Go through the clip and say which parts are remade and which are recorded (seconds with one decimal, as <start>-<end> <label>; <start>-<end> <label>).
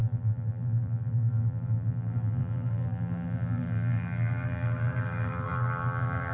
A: 0.0-6.3 remade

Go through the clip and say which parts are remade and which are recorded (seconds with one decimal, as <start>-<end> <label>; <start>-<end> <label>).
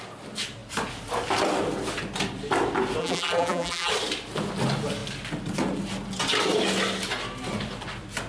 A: 0.0-3.0 recorded; 3.0-3.9 remade; 3.9-8.3 recorded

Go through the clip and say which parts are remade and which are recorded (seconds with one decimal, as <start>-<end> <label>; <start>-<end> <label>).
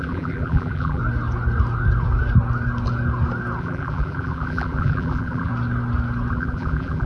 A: 0.0-1.0 remade; 1.0-3.6 recorded; 3.6-5.5 remade; 5.5-6.3 recorded; 6.3-7.1 remade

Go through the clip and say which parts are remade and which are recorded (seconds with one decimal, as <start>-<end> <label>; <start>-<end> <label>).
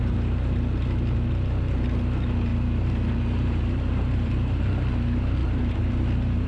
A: 0.0-2.5 recorded; 2.5-4.6 remade; 4.6-5.4 recorded; 5.4-6.5 remade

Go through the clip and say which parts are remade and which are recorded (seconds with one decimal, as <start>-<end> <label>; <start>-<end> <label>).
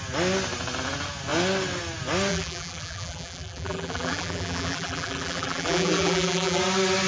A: 0.0-2.3 recorded; 2.3-6.6 remade; 6.6-7.1 recorded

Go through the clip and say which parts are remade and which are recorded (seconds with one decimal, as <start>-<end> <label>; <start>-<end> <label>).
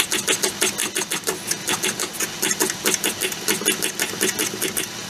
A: 0.0-5.1 recorded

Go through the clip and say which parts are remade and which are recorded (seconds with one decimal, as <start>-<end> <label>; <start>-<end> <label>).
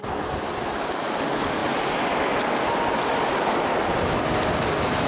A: 0.0-5.1 recorded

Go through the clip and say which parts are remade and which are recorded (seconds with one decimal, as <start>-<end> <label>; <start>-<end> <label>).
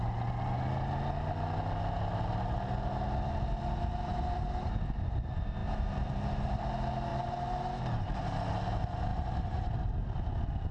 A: 0.0-4.1 recorded; 4.1-4.7 remade; 4.7-5.6 recorded; 5.6-6.6 remade; 6.6-7.1 recorded; 7.1-7.6 remade; 7.6-9.1 recorded; 9.1-9.7 remade; 9.7-10.7 recorded